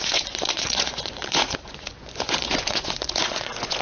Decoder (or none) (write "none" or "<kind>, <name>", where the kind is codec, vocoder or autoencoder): vocoder, Vocos